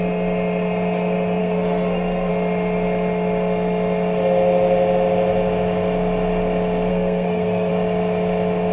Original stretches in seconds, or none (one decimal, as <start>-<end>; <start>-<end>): 0.0-1.4; 2.3-6.9; 7.7-8.7